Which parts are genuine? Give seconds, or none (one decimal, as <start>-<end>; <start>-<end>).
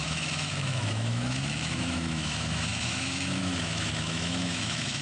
none